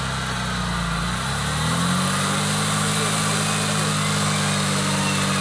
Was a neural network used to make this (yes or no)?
no